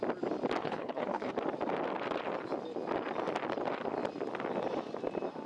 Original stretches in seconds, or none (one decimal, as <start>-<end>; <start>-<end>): 0.0-0.6; 1.3-5.5